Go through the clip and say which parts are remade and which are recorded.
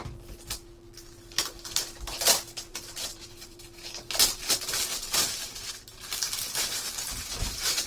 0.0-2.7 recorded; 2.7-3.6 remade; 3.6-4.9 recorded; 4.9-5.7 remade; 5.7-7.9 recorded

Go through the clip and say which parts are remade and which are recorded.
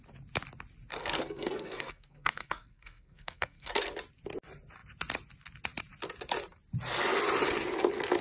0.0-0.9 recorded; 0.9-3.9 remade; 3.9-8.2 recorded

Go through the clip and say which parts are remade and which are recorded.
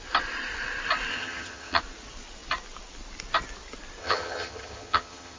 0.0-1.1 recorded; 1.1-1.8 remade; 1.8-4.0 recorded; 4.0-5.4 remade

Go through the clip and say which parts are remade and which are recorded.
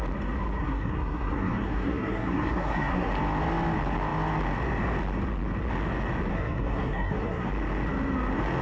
0.0-0.6 recorded; 0.6-3.1 remade; 3.1-6.3 recorded; 6.3-7.5 remade; 7.5-8.6 recorded